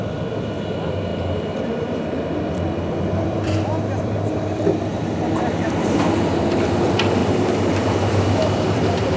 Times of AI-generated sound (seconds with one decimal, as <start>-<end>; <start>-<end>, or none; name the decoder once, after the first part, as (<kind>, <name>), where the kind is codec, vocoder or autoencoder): 0.0-4.9 (vocoder, BigVGAN v2); 5.5-7.2; 7.8-9.2